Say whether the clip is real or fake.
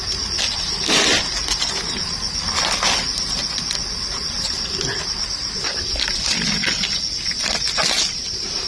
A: real